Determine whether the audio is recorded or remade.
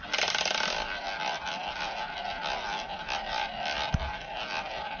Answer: recorded